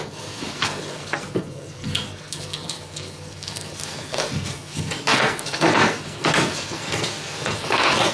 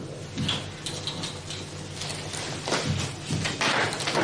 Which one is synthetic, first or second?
first